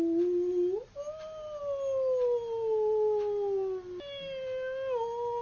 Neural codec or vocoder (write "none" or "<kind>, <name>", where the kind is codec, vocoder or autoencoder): none